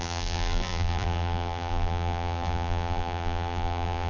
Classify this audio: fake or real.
fake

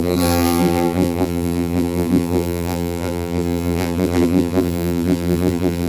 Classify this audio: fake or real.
fake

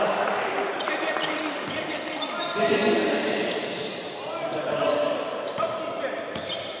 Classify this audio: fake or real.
fake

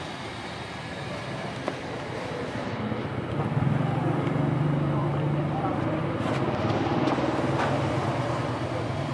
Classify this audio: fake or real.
fake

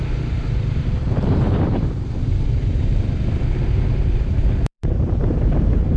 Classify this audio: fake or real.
fake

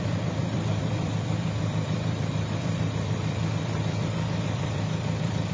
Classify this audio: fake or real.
fake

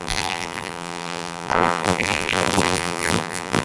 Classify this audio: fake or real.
fake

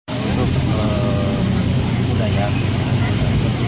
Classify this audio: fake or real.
real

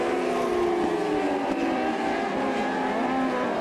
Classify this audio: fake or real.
real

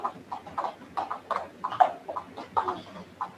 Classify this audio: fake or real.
real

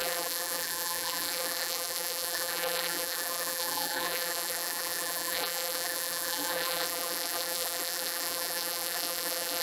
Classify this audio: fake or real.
fake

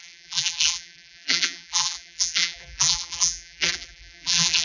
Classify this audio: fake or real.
fake